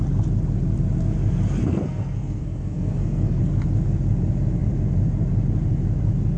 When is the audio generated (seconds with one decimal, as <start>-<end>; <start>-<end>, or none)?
1.6-3.4